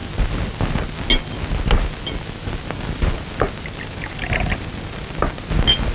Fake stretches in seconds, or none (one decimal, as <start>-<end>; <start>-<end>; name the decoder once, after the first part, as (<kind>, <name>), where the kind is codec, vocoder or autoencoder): none